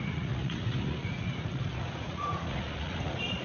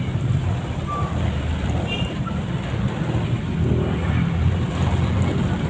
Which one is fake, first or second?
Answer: first